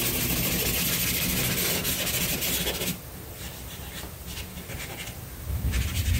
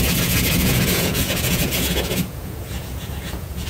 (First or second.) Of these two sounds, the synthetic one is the second